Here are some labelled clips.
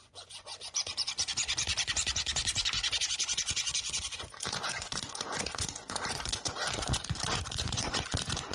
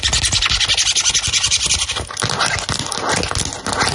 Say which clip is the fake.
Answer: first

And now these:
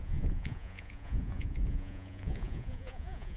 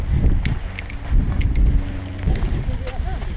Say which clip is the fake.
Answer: first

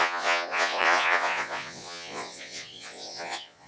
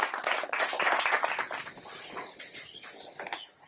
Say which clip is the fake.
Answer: first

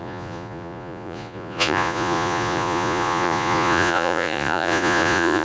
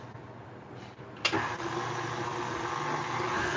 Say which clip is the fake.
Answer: first